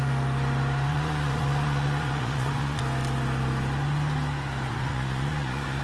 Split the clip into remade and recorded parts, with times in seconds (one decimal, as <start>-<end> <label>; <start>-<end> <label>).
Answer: 0.0-0.9 recorded; 0.9-2.8 remade; 2.8-4.7 recorded; 4.7-5.8 remade